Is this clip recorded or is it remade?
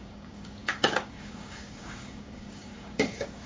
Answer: remade